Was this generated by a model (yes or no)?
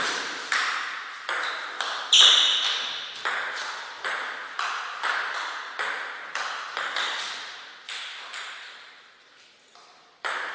no